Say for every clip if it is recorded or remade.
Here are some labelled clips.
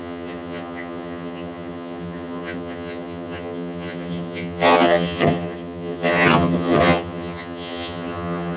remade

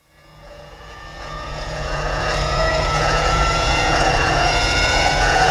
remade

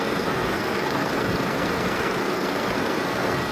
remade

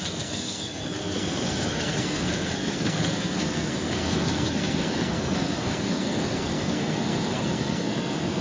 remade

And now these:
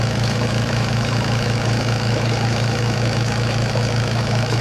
remade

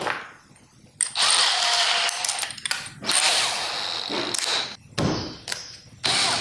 recorded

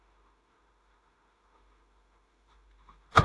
remade